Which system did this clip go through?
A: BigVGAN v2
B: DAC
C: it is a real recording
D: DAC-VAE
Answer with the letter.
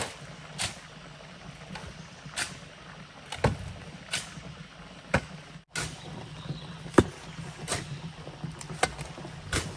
C